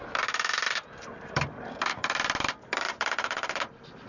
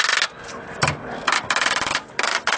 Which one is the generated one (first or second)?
first